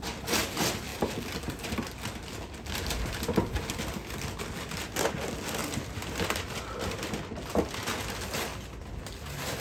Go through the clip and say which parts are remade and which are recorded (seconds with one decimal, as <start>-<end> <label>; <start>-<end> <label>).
0.0-9.6 recorded